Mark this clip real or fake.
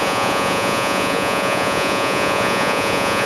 fake